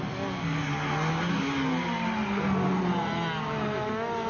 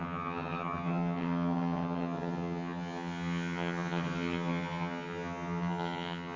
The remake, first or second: second